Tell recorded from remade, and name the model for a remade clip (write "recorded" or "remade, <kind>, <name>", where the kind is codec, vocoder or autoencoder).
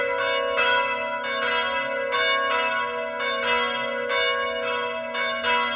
recorded